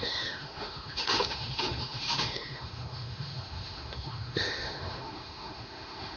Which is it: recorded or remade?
remade